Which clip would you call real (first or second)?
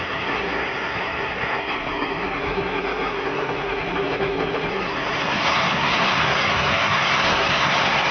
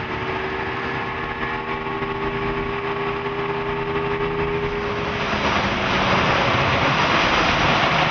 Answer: second